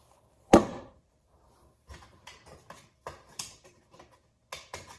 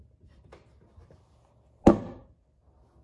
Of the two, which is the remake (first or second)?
first